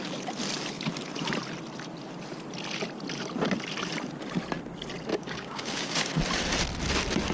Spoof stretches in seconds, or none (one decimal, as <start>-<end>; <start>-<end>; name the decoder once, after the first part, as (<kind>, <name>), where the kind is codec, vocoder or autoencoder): 5.1-6.1 (codec, DAC)